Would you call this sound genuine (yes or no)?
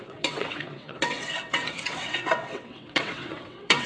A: no